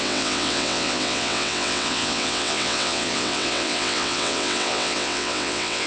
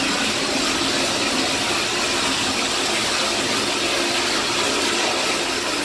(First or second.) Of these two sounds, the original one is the second